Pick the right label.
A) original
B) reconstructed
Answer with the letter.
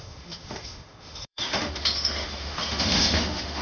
B